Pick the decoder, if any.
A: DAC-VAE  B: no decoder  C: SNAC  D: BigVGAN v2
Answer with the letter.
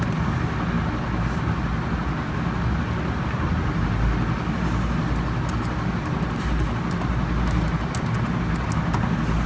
B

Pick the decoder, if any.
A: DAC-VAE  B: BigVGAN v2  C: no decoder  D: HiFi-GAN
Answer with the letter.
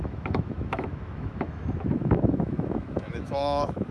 A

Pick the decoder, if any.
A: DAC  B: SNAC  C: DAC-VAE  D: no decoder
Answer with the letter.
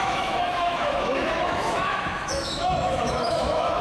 C